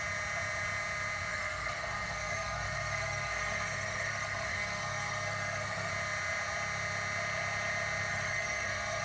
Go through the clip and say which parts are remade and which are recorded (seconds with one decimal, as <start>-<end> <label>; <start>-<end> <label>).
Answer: 0.0-1.3 recorded; 1.3-5.9 remade; 5.9-8.1 recorded; 8.1-9.0 remade